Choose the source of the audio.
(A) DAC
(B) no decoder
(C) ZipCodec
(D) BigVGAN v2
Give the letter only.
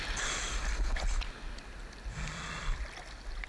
B